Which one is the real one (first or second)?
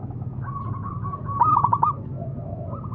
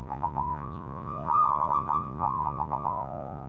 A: first